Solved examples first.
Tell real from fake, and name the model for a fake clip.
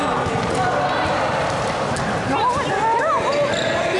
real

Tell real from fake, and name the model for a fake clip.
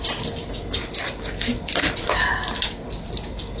real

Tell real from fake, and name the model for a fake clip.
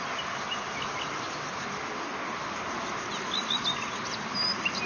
real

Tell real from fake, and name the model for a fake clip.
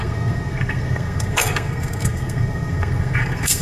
fake, codec, SNAC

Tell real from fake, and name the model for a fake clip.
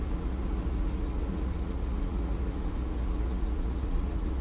fake, vocoder, Vocos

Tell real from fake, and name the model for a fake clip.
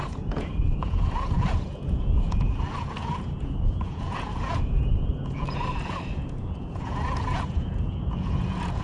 fake, vocoder, Vocos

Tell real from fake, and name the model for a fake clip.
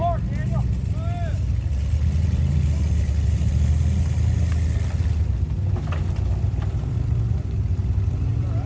real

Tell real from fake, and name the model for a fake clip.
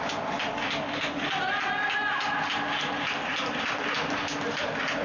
real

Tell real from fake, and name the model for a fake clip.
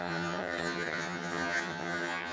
fake, vocoder, HiFi-GAN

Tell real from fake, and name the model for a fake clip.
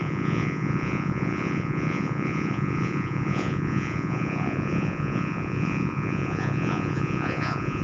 fake, vocoder, Vocos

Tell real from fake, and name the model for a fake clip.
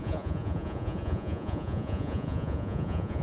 fake, vocoder, Vocos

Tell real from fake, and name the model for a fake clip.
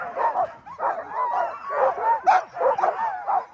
real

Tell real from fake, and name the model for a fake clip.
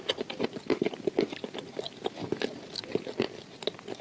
real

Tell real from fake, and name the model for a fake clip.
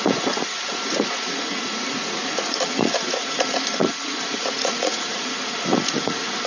fake, vocoder, Vocos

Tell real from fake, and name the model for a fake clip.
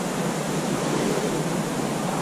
real